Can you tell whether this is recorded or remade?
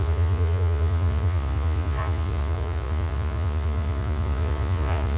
remade